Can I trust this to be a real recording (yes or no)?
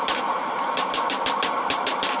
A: no